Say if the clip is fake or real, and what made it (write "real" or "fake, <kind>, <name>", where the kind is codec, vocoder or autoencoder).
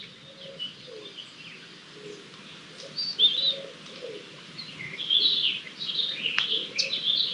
real